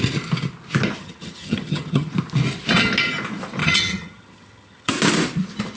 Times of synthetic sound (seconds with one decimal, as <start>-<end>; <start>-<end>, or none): 1.0-2.1; 3.6-4.9